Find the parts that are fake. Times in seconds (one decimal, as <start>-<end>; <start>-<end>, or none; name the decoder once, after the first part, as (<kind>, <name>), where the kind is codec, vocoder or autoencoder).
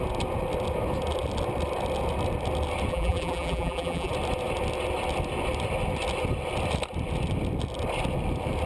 2.9-4.1 (vocoder, BigVGAN v2)